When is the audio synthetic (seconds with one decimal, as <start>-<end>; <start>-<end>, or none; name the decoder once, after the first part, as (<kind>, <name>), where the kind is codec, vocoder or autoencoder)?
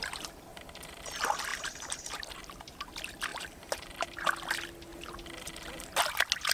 0.5-1.0 (vocoder, BigVGAN v2); 1.5-2.4; 3.3-4.0